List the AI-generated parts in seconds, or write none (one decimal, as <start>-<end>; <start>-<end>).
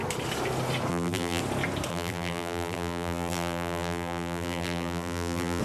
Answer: 0.9-1.4; 1.9-5.6